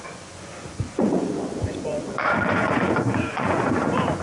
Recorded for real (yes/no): no